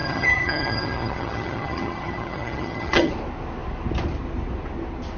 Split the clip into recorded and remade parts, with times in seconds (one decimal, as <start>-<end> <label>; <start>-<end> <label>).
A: 0.0-3.1 remade; 3.1-5.2 recorded